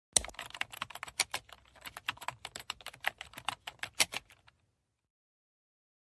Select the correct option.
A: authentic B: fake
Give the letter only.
A